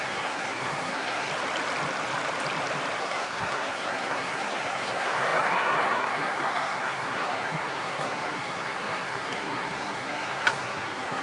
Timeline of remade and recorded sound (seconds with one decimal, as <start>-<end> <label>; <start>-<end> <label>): 0.0-1.3 remade; 1.3-3.0 recorded; 3.0-11.2 remade